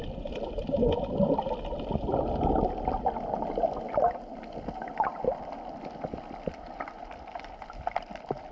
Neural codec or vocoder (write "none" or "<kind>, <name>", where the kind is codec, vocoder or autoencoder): none